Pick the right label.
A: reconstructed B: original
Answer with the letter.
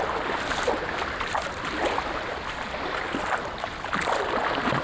B